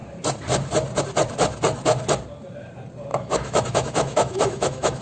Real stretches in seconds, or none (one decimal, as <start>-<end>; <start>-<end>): 0.0-3.1